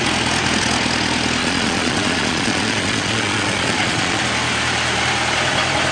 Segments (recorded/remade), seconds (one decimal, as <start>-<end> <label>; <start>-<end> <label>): 0.0-1.4 recorded; 1.4-4.2 remade; 4.2-5.9 recorded

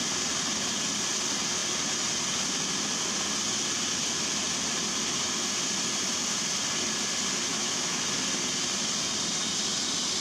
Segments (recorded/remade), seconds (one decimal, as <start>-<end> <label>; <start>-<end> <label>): 0.0-7.5 recorded; 7.5-8.0 remade; 8.0-10.2 recorded

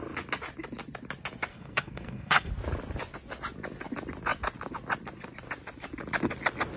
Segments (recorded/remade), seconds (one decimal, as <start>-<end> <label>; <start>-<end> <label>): 0.0-1.5 recorded; 1.5-2.5 remade; 2.5-6.8 recorded

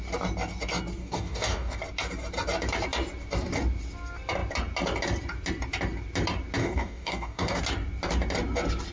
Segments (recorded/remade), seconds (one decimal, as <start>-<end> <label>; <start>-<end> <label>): 0.0-1.0 recorded; 1.0-1.8 remade; 1.8-6.6 recorded; 6.6-7.6 remade; 7.6-8.9 recorded

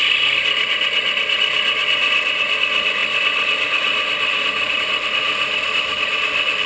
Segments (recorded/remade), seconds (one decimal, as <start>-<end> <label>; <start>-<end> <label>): 0.0-6.7 recorded